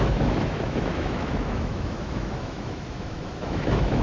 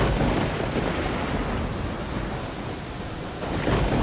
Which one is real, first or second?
second